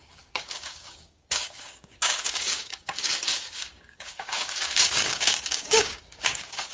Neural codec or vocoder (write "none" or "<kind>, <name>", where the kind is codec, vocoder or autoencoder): codec, DAC